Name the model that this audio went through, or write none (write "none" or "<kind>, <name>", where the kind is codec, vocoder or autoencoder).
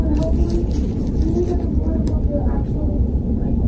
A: none